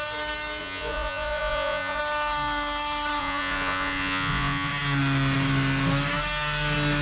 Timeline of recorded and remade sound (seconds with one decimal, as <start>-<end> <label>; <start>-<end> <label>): 0.0-0.6 recorded; 0.6-2.0 remade; 2.0-3.2 recorded; 3.2-4.7 remade; 4.7-7.0 recorded

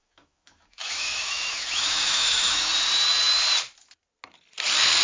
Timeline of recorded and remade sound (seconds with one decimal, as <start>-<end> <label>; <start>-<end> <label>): 0.0-2.7 remade; 2.7-5.0 recorded

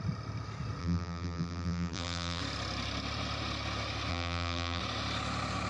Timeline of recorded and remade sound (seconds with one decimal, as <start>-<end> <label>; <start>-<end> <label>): 0.0-0.8 recorded; 0.8-2.4 remade; 2.4-4.1 recorded; 4.1-4.8 remade; 4.8-5.7 recorded

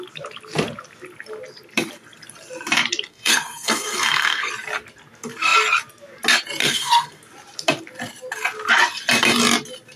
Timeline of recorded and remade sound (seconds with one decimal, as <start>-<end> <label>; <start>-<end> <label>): 0.0-3.1 recorded; 3.1-4.5 remade; 4.5-6.6 recorded; 6.6-7.2 remade; 7.2-10.0 recorded

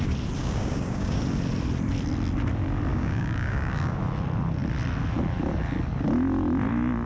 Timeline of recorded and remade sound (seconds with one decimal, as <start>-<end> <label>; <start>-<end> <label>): 0.0-0.4 recorded; 0.4-1.2 remade; 1.2-2.9 recorded; 2.9-4.0 remade; 4.0-7.1 recorded

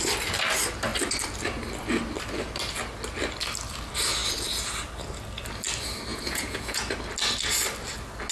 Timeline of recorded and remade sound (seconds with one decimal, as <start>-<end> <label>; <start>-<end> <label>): 0.0-6.1 recorded; 6.1-6.8 remade; 6.8-8.3 recorded

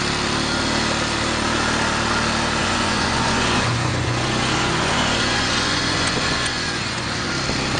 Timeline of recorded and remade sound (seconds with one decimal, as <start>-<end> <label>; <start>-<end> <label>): 0.0-2.6 recorded; 2.6-7.3 remade; 7.3-7.8 recorded

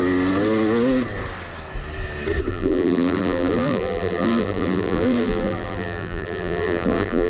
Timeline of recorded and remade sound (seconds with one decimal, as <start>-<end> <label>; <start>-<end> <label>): 0.0-2.5 recorded; 2.5-7.3 remade